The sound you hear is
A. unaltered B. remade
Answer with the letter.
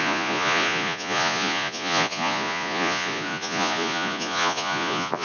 B